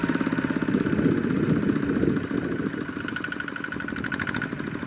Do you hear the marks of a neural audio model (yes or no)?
no